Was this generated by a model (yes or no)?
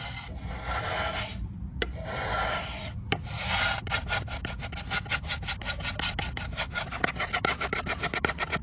no